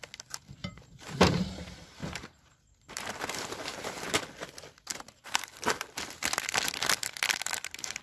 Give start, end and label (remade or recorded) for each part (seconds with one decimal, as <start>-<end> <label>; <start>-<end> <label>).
0.0-0.6 recorded; 0.6-1.4 remade; 1.4-2.0 recorded; 2.0-4.2 remade; 4.2-4.9 recorded; 4.9-5.7 remade; 5.7-8.0 recorded

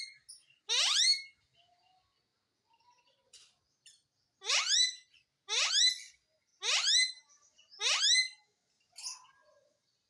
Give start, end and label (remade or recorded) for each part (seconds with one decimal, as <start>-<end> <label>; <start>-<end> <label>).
0.0-2.3 recorded; 2.3-5.7 remade; 5.7-10.1 recorded